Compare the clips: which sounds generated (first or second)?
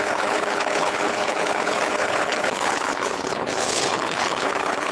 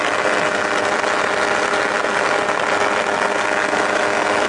first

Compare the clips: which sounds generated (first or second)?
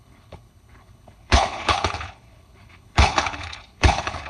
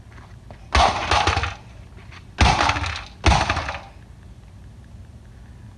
first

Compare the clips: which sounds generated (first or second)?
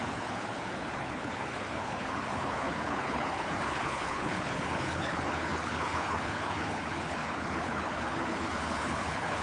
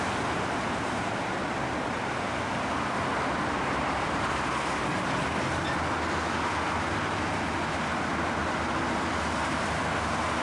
first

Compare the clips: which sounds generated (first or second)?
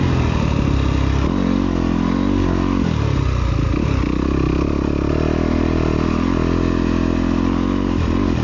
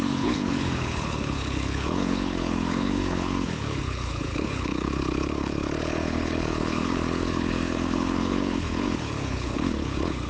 second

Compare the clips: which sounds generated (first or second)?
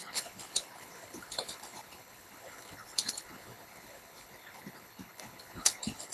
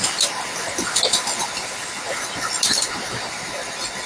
first